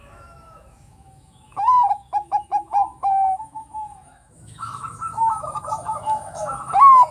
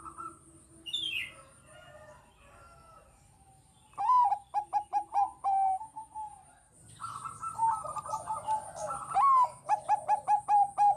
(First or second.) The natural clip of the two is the second